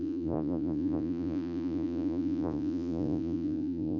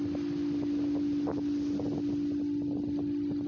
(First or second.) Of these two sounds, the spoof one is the first